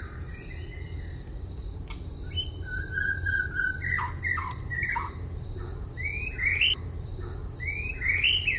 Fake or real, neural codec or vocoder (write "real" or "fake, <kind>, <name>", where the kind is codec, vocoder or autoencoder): real